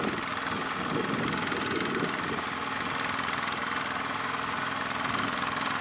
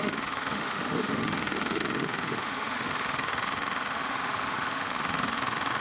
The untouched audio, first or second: first